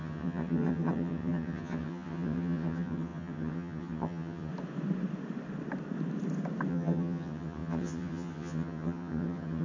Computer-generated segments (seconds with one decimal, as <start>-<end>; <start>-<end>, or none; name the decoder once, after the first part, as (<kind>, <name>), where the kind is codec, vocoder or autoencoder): 0.0-4.5 (vocoder, HiFi-GAN); 6.7-9.6